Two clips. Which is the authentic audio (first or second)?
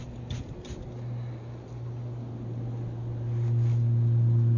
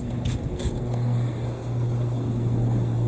first